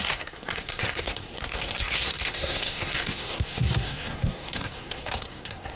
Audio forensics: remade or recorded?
remade